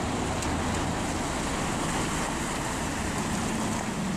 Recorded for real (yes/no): yes